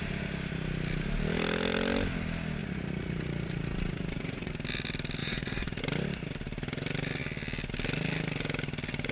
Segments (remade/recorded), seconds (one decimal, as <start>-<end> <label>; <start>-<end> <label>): 0.0-2.6 recorded; 2.6-4.5 remade; 4.5-5.2 recorded; 5.2-5.8 remade; 5.8-9.1 recorded